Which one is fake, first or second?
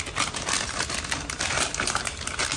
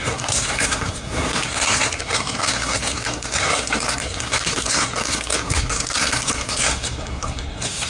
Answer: second